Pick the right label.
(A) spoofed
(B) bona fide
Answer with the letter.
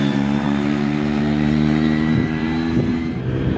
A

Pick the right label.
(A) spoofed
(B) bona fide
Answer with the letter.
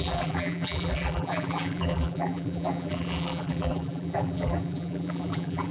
A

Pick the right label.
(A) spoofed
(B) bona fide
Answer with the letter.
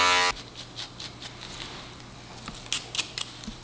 B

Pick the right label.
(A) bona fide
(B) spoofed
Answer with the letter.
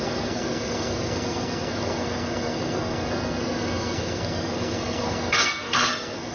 B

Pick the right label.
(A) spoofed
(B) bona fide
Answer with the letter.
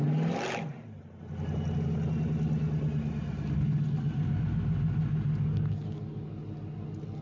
B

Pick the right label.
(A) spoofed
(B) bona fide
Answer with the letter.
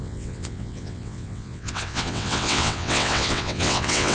A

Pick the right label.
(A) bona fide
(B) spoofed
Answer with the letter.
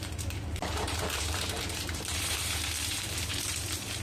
B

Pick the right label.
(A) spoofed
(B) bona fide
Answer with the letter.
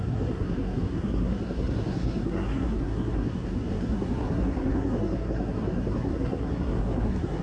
A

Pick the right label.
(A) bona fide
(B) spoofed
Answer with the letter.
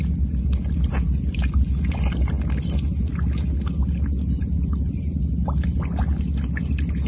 A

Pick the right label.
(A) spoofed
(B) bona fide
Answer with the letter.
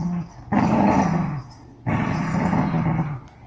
B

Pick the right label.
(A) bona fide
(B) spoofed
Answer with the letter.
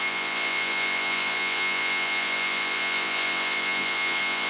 B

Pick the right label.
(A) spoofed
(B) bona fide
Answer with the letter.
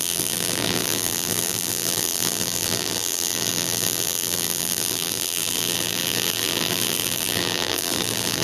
A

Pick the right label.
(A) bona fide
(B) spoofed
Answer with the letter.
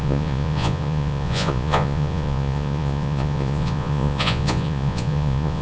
B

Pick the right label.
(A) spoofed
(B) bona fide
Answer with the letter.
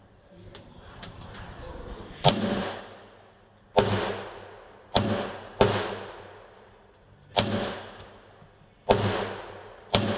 B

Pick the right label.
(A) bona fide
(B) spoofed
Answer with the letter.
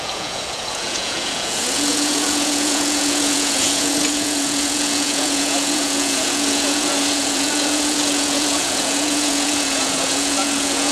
B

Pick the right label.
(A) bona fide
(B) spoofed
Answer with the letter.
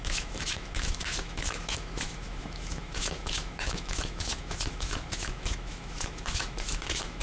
B